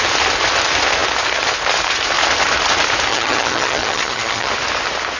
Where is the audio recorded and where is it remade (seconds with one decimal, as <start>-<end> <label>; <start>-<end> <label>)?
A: 0.0-3.1 recorded; 3.1-4.5 remade; 4.5-5.2 recorded